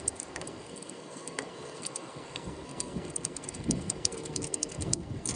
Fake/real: fake